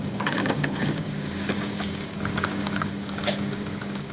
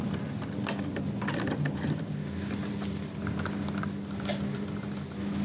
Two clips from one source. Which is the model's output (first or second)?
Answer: first